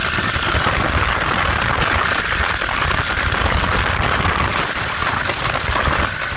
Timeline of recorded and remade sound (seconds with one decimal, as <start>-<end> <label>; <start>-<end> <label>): 0.0-6.4 recorded